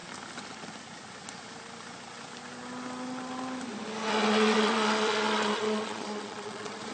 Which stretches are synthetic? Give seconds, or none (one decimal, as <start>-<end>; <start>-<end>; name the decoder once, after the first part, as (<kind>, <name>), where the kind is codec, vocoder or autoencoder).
4.1-6.9 (vocoder, Vocos)